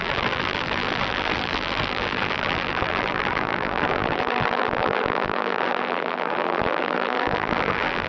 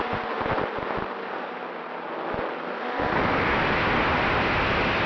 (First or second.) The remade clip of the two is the first